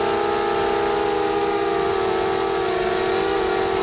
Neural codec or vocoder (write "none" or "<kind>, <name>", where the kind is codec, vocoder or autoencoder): none